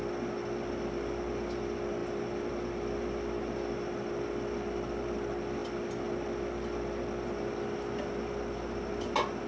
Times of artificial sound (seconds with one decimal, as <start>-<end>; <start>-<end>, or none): none

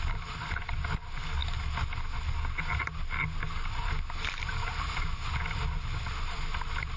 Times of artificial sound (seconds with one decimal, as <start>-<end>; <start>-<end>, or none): none

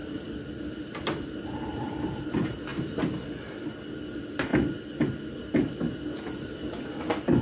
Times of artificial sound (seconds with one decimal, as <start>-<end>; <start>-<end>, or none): 0.0-0.7; 1.7-2.2; 2.7-4.0

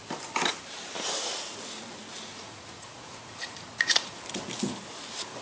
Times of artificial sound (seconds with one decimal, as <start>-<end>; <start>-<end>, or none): 2.3-4.2

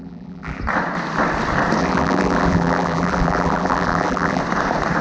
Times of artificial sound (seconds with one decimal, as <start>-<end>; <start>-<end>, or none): 0.0-0.6; 1.8-4.4

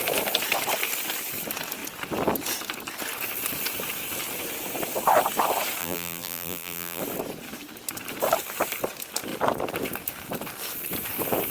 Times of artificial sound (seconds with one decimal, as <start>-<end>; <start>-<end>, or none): 5.8-7.0

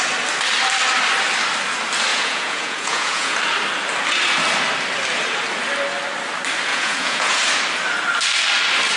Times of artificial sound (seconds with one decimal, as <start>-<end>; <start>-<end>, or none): 2.1-3.4; 6.7-7.4